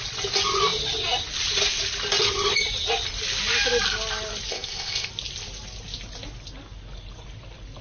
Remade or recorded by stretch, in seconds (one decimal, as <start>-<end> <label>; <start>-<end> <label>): 0.0-4.5 recorded; 4.5-5.1 remade; 5.1-7.8 recorded